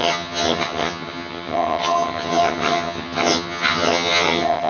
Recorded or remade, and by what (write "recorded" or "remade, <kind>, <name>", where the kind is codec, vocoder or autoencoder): remade, vocoder, HiFi-GAN